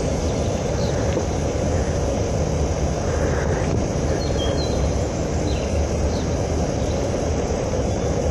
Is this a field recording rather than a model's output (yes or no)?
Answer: no